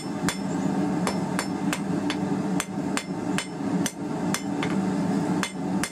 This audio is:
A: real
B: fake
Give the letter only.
A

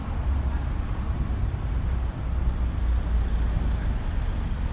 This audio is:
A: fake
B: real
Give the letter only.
B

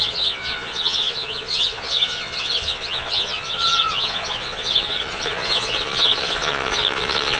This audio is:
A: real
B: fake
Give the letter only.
B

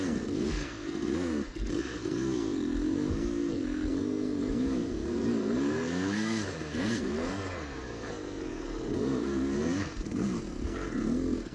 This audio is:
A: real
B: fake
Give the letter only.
B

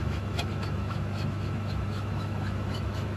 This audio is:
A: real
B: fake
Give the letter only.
B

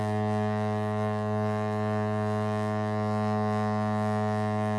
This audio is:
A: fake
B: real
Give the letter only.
B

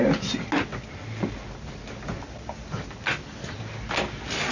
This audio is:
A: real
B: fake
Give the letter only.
A